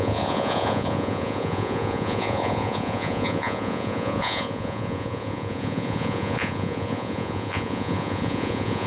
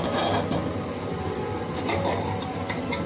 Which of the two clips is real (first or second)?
second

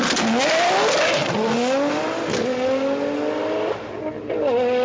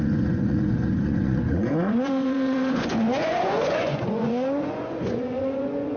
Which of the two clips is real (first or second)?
first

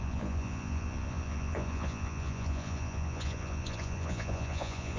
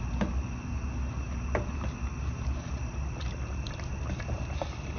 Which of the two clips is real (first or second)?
second